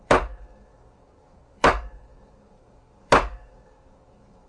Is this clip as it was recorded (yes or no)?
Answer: no